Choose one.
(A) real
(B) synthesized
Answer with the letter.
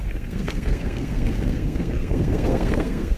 B